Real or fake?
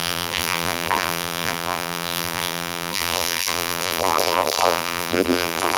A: fake